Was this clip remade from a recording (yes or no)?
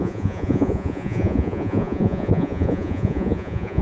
yes